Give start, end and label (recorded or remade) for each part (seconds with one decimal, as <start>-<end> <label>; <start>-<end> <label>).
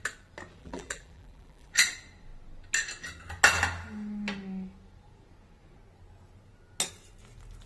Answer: 0.0-0.6 recorded; 0.6-1.7 remade; 1.7-7.7 recorded